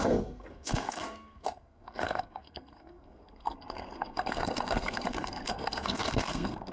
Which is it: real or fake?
fake